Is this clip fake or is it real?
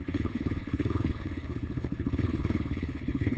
fake